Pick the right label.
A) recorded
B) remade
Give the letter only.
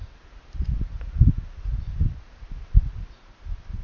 A